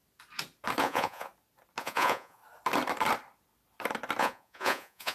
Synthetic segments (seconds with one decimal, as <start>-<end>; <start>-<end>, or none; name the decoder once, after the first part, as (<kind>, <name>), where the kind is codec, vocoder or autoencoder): 0.8-1.3 (vocoder, Vocos); 1.8-2.4; 4.2-5.1